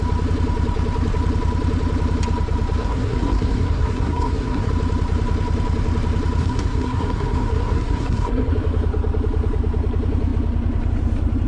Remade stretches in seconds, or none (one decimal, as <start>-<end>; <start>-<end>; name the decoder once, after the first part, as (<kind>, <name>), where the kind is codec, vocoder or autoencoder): 2.8-4.7 (codec, SNAC); 6.4-8.5